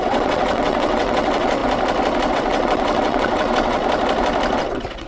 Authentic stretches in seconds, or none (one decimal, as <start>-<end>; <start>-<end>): 1.6-2.3; 3.8-4.6